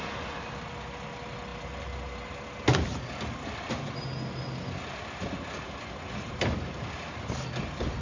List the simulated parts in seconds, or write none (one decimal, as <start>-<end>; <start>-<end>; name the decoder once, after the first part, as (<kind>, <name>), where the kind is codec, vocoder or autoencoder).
none